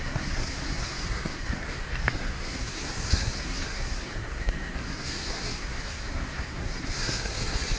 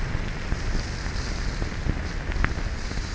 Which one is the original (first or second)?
second